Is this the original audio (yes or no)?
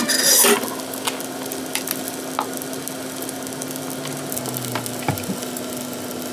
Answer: yes